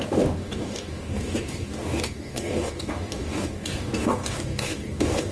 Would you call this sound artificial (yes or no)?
yes